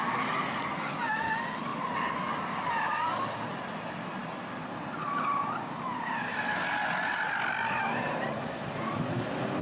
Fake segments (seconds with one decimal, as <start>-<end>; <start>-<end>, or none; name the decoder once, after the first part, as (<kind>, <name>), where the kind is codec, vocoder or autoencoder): none